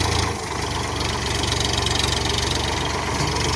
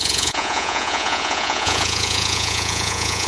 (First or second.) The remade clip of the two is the second